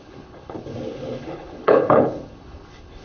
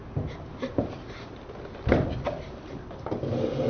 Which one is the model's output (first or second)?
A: first